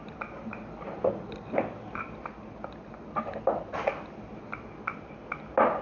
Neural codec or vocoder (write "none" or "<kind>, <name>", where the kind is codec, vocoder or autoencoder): none